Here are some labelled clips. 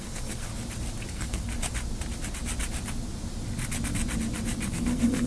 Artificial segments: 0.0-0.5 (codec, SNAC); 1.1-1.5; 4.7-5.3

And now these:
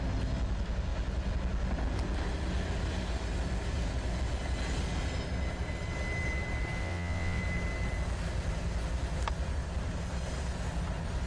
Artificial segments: 6.8-7.4 (vocoder, WaveNeXt)

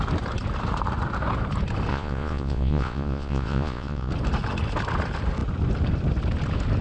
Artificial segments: 1.9-4.1 (vocoder, Vocos)